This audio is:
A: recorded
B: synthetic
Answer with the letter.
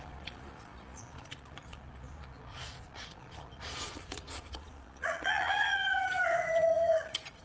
B